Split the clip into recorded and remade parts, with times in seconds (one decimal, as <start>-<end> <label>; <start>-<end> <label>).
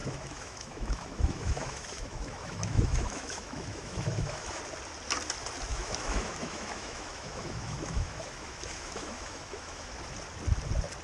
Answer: 0.0-4.6 remade; 4.6-5.7 recorded; 5.7-9.9 remade; 9.9-11.0 recorded